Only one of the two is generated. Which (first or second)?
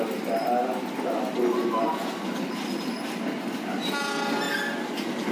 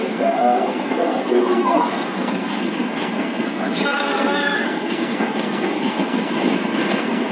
second